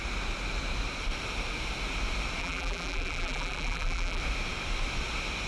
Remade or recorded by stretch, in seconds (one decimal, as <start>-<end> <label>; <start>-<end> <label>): 0.0-2.4 recorded; 2.4-4.2 remade; 4.2-5.5 recorded